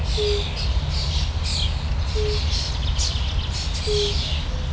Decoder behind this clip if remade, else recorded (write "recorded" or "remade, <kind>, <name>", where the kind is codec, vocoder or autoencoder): recorded